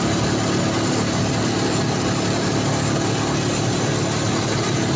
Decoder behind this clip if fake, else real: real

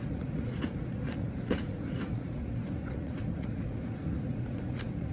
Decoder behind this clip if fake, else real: fake, vocoder, Vocos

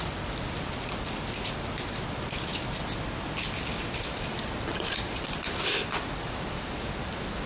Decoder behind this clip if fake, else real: real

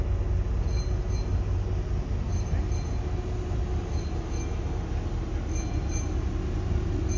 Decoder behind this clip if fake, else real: real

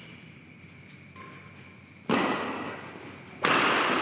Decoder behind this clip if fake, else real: real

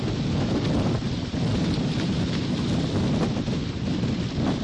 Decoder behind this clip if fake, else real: fake, vocoder, BigVGAN v2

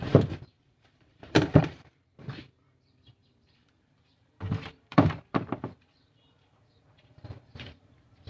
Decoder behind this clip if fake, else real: fake, vocoder, BigVGAN v2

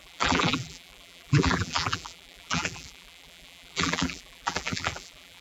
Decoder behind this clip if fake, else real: fake, vocoder, BigVGAN v2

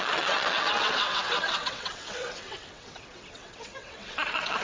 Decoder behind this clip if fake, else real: fake, vocoder, WaveNeXt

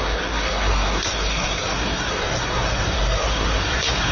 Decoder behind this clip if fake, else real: fake, codec, SNAC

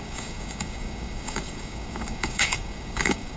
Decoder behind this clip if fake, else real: fake, codec, DAC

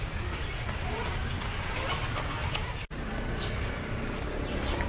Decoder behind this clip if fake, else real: real